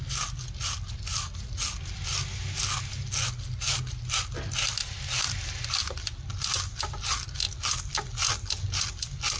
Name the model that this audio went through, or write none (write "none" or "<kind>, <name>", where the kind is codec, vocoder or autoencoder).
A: none